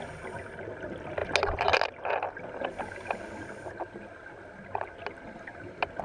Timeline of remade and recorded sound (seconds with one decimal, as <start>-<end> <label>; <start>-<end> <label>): 0.0-6.0 recorded